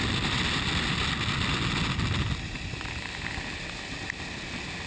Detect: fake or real real